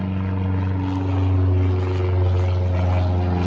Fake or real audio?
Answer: real